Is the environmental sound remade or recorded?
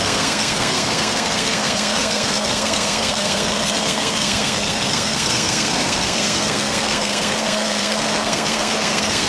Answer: remade